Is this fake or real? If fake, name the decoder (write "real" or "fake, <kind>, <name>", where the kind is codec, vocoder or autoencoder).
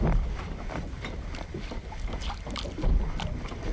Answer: real